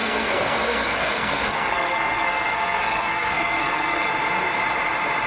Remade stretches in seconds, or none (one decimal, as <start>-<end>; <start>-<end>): 0.0-4.1